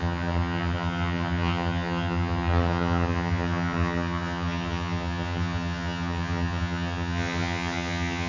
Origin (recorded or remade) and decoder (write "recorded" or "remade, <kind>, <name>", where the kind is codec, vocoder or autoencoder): remade, vocoder, HiFi-GAN